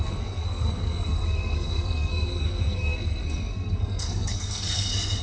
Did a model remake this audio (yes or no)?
yes